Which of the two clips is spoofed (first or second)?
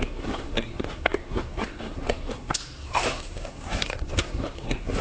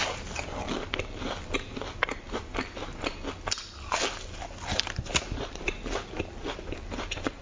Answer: first